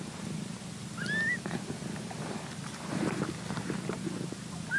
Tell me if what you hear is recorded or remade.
recorded